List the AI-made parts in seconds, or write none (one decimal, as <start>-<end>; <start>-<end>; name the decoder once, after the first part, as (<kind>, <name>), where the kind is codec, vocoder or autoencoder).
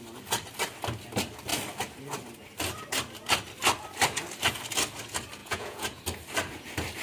5.4-6.0 (vocoder, Vocos)